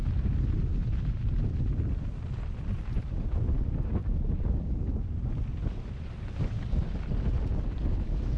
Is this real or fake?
real